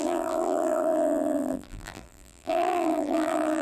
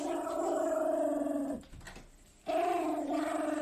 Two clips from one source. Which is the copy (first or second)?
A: first